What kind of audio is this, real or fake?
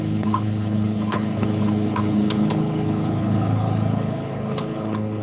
fake